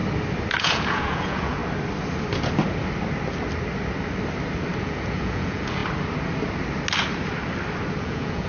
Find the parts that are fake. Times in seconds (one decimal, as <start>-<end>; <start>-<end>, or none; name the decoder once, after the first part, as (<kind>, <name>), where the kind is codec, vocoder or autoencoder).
0.6-1.6 (vocoder, Vocos); 4.8-5.8; 8.0-8.5